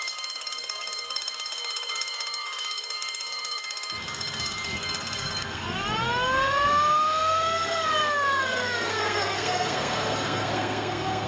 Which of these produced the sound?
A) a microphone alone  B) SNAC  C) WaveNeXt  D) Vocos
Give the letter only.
B